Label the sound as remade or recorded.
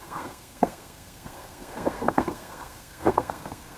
remade